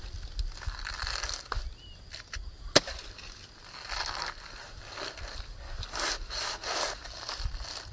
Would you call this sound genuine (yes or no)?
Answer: yes